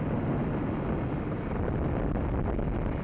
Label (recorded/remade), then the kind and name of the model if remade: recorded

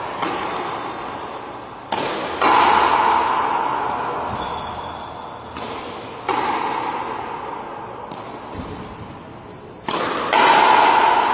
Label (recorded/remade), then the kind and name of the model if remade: recorded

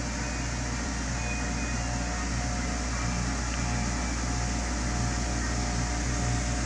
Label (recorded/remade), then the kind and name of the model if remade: recorded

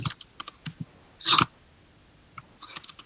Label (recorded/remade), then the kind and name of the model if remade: recorded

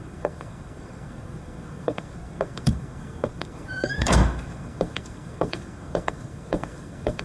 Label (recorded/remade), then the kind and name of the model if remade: remade, codec, SNAC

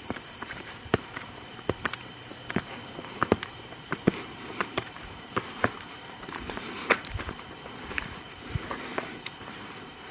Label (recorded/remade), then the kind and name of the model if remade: remade, vocoder, BigVGAN v2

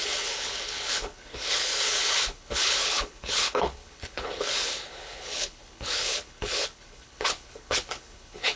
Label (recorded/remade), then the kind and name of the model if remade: remade, codec, HILCodec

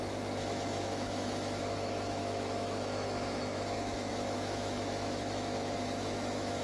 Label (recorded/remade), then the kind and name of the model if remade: remade, autoencoder, DAC-VAE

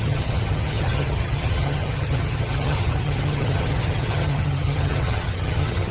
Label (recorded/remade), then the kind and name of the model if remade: remade, vocoder, HiFi-GAN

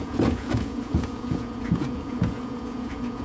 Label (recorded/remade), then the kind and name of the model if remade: remade, vocoder, Vocos